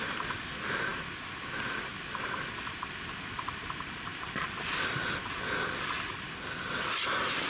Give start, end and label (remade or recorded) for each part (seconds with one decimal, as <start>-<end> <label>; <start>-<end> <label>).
0.0-7.5 recorded